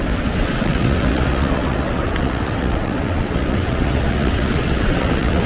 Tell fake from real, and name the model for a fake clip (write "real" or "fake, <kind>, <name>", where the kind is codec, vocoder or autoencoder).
fake, vocoder, WaveNeXt